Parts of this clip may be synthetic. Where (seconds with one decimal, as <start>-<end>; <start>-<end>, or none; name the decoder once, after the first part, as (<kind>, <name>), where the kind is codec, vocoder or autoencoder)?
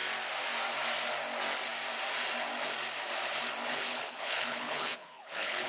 3.7-5.7 (codec, HILCodec)